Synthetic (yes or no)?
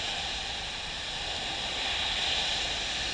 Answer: no